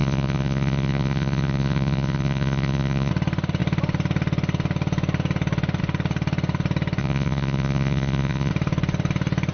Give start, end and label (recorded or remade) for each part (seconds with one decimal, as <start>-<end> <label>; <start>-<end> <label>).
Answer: 0.0-3.1 remade; 3.1-7.0 recorded; 7.0-8.5 remade; 8.5-9.5 recorded